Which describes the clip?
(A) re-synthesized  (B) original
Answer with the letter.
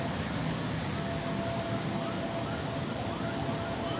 B